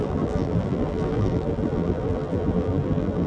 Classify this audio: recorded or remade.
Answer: remade